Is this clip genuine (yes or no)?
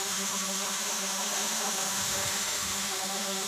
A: no